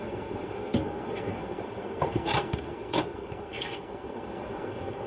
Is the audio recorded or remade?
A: remade